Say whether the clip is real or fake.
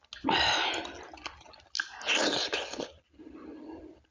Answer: real